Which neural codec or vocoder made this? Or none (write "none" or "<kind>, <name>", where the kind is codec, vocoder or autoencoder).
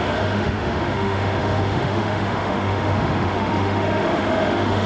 autoencoder, DAC-VAE